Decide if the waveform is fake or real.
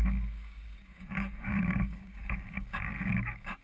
fake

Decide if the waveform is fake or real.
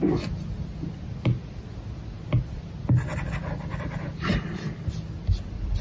real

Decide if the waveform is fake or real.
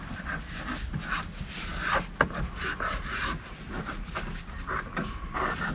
real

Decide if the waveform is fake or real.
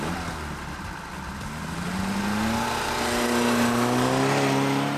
real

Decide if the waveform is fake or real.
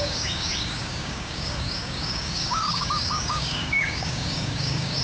fake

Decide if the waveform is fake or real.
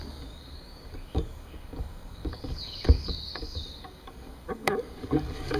fake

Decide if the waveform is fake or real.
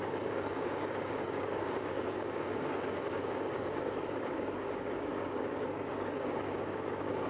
fake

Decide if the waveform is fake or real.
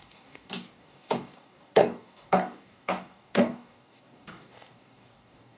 fake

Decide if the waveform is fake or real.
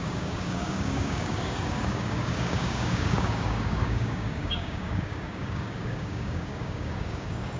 fake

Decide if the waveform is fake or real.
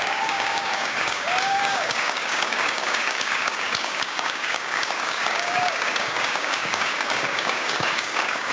fake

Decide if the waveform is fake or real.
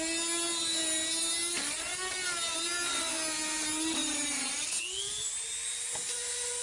real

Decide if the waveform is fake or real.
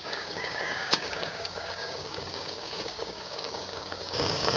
fake